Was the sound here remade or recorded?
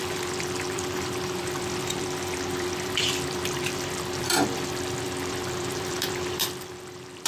remade